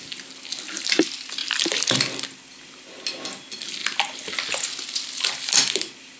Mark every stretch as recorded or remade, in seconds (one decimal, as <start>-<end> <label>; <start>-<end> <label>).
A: 0.0-6.2 recorded

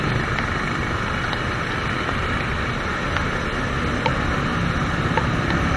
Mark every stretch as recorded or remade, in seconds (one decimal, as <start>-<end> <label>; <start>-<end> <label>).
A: 0.0-5.8 recorded

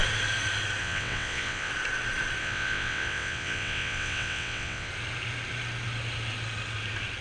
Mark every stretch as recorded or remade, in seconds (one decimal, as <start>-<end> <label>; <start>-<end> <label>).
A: 0.0-0.8 recorded; 0.8-1.7 remade; 1.7-2.4 recorded; 2.4-4.9 remade; 4.9-7.2 recorded

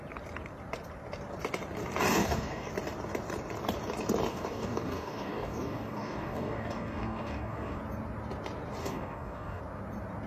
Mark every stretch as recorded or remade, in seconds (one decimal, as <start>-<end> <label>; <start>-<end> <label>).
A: 0.0-2.2 recorded; 2.2-2.7 remade; 2.7-4.3 recorded; 4.3-7.8 remade; 7.8-8.8 recorded; 8.8-9.6 remade; 9.6-10.3 recorded

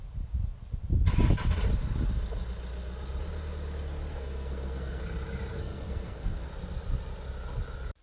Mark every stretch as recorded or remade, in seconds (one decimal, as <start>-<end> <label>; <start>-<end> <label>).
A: 0.0-4.1 recorded; 4.1-5.0 remade; 5.0-5.5 recorded; 5.5-6.5 remade; 6.5-8.0 recorded